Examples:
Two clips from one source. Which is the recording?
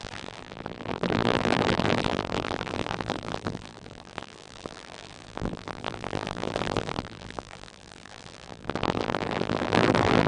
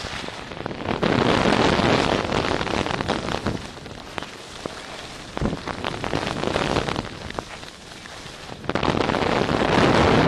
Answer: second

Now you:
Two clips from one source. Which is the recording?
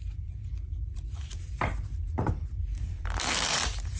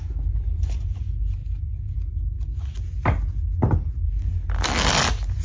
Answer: second